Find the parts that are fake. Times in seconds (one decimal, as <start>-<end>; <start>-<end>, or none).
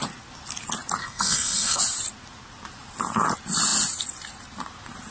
1.0-1.8